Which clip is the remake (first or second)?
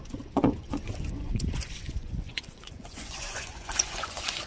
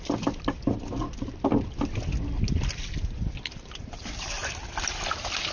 first